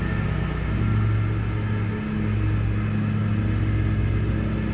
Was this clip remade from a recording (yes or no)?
no